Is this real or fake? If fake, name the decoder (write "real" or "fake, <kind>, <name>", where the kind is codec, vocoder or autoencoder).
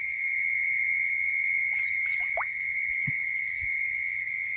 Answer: fake, vocoder, BigVGAN v2